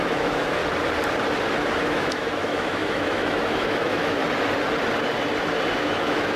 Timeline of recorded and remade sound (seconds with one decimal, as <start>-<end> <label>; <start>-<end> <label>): 0.0-0.6 remade; 0.6-1.8 recorded; 1.8-4.2 remade; 4.2-5.8 recorded; 5.8-6.4 remade